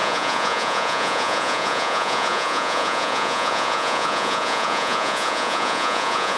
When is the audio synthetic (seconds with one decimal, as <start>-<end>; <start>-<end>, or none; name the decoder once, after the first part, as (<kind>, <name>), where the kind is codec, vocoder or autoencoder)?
0.0-6.4 (vocoder, Vocos)